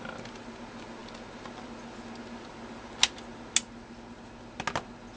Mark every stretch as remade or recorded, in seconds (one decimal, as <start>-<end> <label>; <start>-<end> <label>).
0.0-5.2 recorded